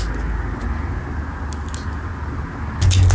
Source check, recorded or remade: recorded